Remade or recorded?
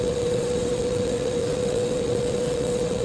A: remade